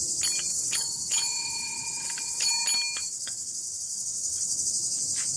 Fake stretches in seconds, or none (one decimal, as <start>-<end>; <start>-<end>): 0.5-2.5; 3.0-4.7

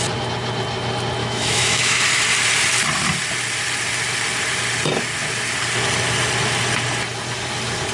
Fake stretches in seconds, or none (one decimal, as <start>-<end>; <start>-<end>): 1.2-2.0

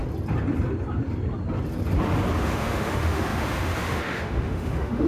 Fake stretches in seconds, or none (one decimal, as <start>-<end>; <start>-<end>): 2.4-5.1

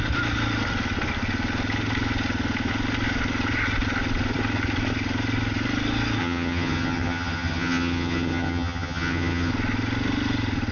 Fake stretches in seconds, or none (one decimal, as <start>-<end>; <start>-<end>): 6.2-9.5

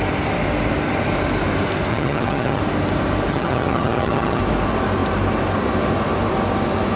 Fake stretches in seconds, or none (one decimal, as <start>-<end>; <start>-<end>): 1.9-2.6; 3.3-4.4

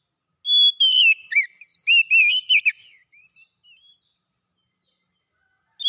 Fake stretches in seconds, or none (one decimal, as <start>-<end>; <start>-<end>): none

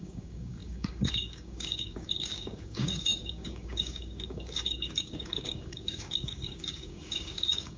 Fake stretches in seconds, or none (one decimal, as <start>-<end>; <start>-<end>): 0.0-7.8